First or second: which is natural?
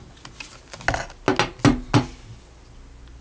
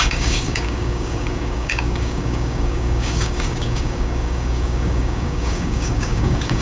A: first